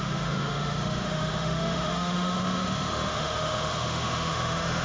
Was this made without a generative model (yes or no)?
no